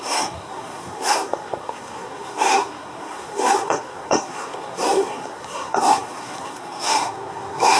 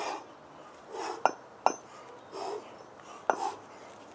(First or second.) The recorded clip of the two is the second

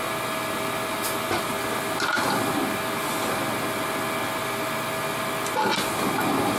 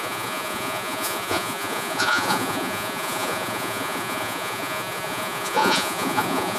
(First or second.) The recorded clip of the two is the first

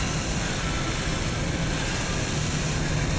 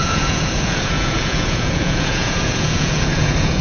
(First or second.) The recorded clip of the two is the first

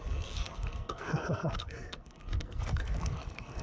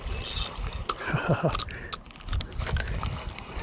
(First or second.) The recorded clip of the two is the second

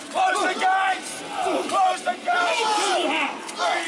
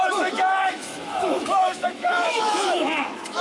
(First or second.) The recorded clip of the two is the first